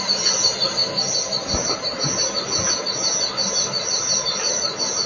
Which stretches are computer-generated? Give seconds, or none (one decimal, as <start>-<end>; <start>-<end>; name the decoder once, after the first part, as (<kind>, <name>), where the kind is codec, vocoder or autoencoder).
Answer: none